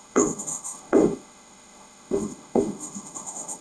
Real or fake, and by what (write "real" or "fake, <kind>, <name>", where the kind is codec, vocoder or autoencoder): fake, autoencoder, DAC-VAE